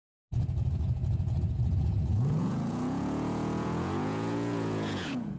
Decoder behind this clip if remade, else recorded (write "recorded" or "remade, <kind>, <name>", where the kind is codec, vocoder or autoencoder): remade, vocoder, Vocos